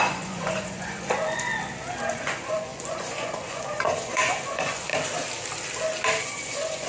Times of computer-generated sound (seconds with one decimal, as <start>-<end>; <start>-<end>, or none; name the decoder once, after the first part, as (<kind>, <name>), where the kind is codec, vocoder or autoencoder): 0.0-1.5 (vocoder, Vocos); 2.1-4.9; 6.2-6.9